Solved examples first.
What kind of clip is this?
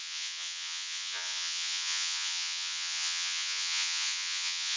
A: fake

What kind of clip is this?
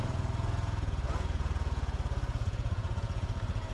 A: fake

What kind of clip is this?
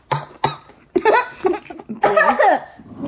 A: real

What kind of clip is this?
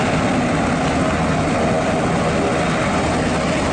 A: real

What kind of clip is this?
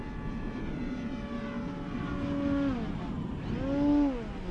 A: real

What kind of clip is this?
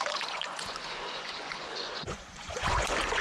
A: fake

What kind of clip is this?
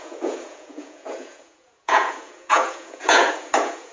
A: fake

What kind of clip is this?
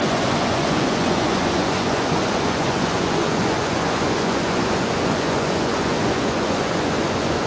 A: fake